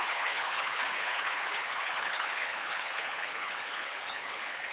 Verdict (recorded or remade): remade